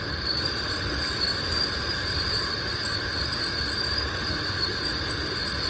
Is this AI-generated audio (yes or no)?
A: no